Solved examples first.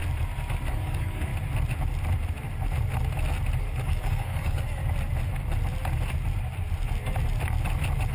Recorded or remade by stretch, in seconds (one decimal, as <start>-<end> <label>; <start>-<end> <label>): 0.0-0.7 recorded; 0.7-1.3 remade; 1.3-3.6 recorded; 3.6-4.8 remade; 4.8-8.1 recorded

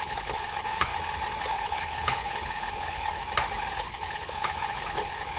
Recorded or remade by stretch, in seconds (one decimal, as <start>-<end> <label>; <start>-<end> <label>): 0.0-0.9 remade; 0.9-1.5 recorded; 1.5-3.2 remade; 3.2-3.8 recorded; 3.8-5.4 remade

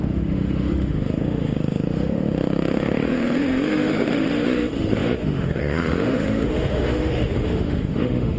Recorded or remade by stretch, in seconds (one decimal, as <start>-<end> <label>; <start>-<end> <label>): 0.0-8.4 remade